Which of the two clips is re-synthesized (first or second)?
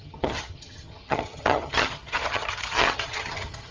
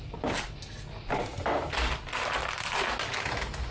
first